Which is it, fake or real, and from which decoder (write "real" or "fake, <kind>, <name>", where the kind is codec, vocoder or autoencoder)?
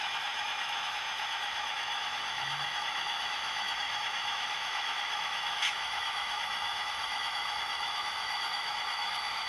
fake, autoencoder, DAC-VAE